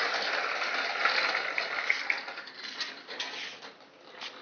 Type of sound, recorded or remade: recorded